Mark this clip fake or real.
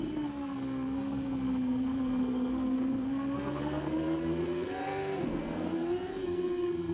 fake